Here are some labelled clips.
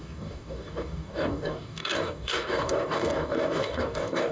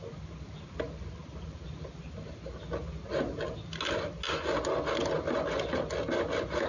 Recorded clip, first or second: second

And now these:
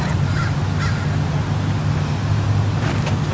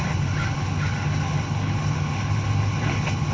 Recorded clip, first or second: first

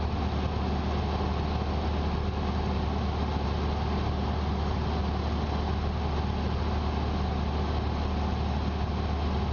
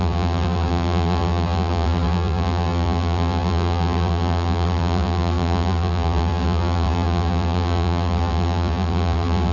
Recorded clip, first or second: first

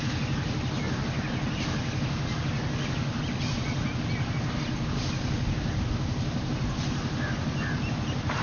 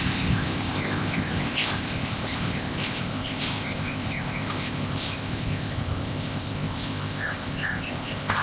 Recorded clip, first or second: first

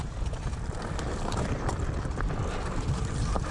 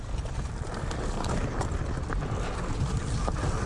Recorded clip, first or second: second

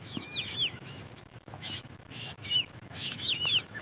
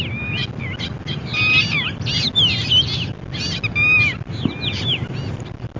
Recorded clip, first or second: second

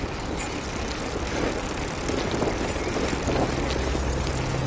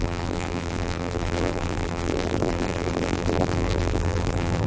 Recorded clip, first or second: first